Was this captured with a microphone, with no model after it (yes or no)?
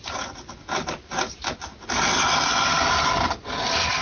yes